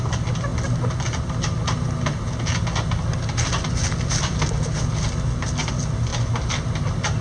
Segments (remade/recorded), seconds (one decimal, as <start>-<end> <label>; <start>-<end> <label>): 0.0-7.2 recorded